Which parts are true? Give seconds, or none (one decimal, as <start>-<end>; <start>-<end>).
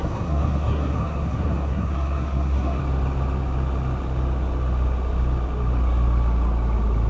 2.8-7.1